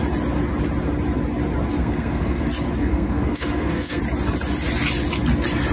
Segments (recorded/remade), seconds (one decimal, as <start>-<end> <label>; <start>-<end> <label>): 0.0-1.8 recorded; 1.8-2.4 remade; 2.4-2.8 recorded; 2.8-4.0 remade; 4.0-5.7 recorded